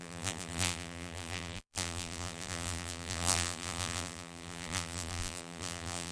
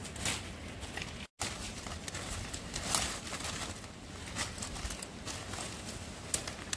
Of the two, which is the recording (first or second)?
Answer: second